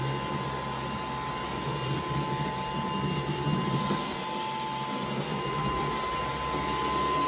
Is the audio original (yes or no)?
yes